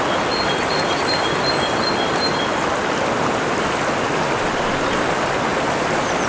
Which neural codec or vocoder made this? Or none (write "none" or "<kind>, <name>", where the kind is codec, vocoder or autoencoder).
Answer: none